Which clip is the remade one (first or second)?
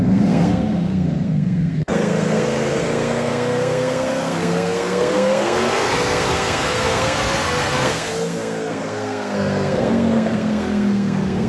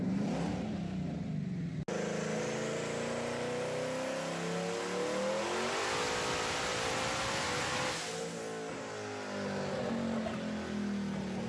first